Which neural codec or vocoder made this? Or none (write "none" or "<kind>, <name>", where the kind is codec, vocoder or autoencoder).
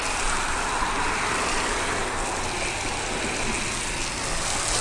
none